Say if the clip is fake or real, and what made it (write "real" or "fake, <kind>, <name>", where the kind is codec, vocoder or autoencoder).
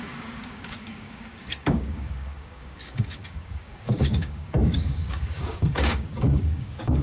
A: fake, codec, DAC